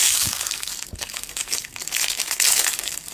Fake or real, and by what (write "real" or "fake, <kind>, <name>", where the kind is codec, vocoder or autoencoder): fake, codec, SNAC